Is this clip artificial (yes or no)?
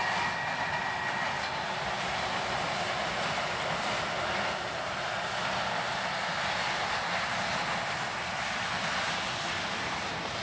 no